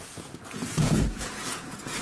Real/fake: fake